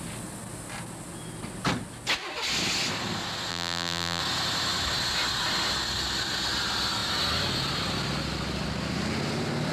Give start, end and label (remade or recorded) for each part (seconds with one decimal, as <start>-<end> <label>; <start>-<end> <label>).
0.0-3.5 recorded; 3.5-4.2 remade; 4.2-9.7 recorded